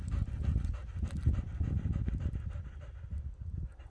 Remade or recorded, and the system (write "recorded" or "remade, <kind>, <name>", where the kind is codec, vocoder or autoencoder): recorded